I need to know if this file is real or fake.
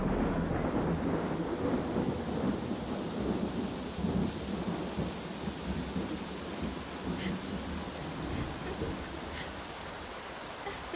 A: real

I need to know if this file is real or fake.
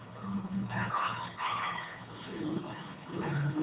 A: fake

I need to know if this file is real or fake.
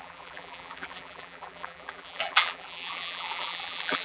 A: fake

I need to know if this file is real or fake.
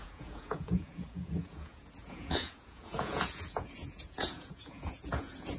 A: fake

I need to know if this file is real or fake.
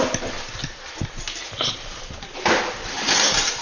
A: real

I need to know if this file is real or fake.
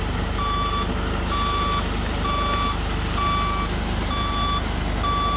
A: real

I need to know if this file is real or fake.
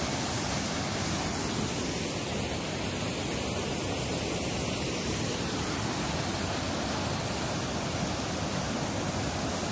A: real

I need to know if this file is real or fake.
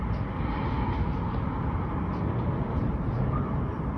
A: real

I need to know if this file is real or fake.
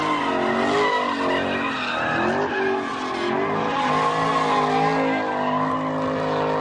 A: real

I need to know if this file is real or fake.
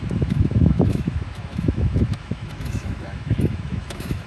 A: fake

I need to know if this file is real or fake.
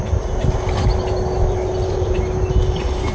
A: real